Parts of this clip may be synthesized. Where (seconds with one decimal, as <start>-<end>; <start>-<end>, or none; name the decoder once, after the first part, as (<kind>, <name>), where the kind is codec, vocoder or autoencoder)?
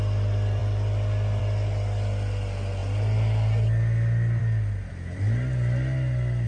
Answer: none